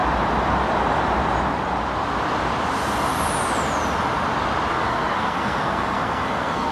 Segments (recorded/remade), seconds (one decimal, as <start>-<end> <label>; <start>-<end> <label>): 0.0-4.7 recorded; 4.7-6.7 remade